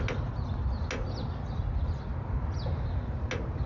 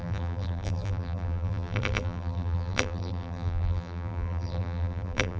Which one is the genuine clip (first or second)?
first